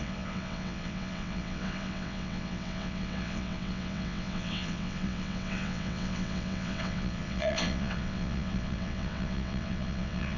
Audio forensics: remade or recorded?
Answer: remade